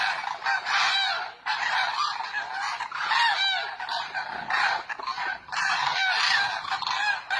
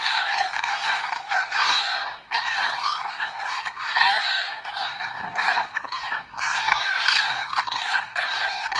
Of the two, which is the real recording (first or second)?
first